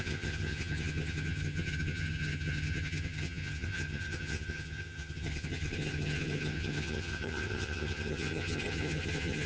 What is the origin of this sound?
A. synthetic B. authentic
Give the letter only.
A